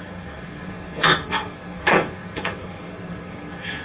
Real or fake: fake